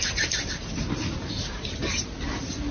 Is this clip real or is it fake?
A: real